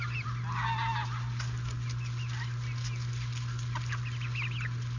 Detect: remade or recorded recorded